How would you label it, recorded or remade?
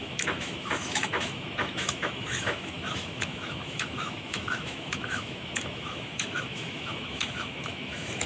remade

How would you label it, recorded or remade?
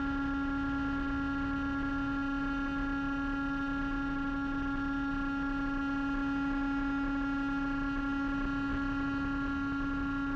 recorded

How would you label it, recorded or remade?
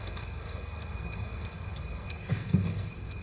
remade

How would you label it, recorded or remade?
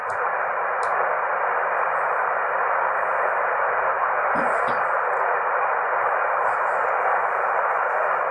recorded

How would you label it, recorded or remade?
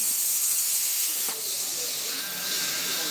remade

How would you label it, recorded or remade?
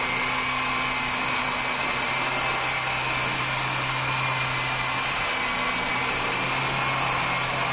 recorded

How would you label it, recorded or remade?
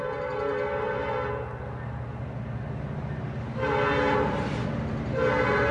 recorded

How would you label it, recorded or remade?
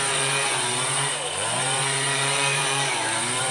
remade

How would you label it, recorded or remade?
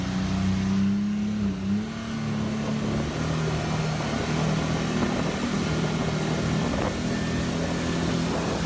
recorded